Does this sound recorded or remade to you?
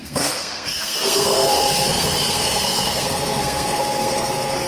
remade